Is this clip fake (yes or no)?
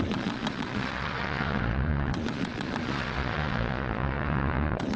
yes